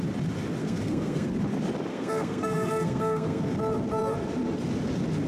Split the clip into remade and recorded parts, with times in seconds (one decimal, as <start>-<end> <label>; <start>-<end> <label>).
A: 0.0-0.6 recorded; 0.6-1.3 remade; 1.3-1.9 recorded; 1.9-3.4 remade; 3.4-5.3 recorded